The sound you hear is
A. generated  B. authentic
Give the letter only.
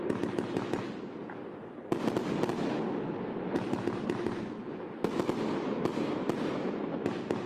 B